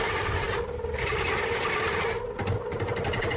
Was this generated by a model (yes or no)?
no